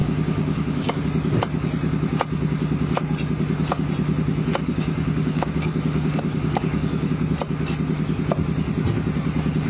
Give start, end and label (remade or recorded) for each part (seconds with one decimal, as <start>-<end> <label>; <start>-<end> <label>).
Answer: 0.0-1.0 remade; 1.0-4.5 recorded; 4.5-7.1 remade; 7.1-9.7 recorded

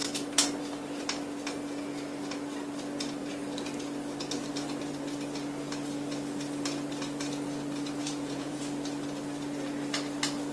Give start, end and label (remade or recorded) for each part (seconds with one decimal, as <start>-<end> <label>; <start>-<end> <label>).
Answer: 0.0-8.0 recorded; 8.0-8.6 remade; 8.6-10.5 recorded